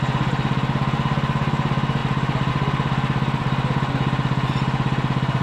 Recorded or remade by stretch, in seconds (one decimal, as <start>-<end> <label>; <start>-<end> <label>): 0.0-5.4 recorded